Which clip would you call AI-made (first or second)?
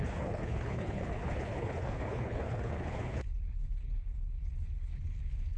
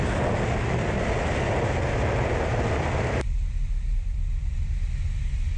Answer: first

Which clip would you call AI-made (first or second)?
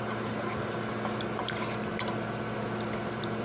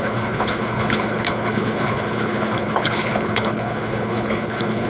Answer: second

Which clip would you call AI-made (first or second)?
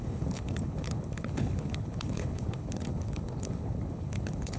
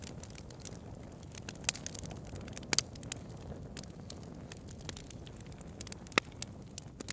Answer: first